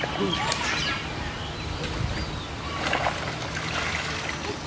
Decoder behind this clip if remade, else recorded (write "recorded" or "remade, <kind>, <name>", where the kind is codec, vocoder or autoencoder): recorded